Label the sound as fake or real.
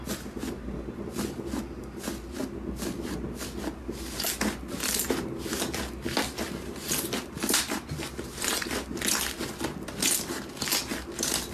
real